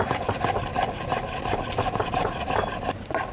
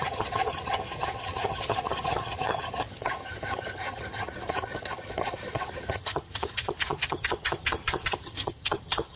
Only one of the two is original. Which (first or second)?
first